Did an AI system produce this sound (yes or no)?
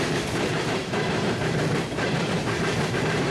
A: yes